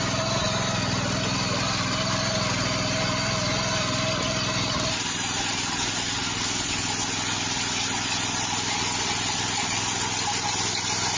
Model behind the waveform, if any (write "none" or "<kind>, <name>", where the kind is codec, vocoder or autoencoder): none